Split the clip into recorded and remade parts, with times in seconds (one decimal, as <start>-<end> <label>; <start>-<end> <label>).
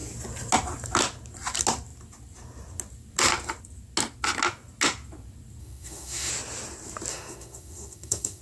0.0-5.6 recorded; 5.6-6.3 remade; 6.3-7.1 recorded; 7.1-8.4 remade